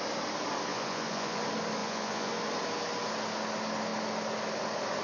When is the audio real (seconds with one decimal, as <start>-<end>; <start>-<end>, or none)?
0.0-0.7; 1.4-1.8; 2.3-5.0

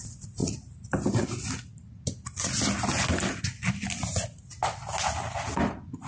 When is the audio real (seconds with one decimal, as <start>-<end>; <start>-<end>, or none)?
0.0-6.1

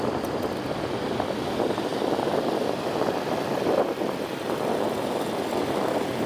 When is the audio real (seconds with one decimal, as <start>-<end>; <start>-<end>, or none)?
0.0-6.3

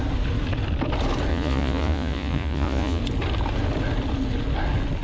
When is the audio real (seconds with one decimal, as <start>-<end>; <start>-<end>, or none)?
0.0-1.3; 3.0-5.0

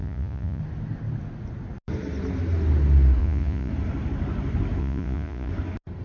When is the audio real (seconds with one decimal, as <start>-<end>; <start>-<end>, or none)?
0.6-3.2; 3.7-4.8; 5.5-6.0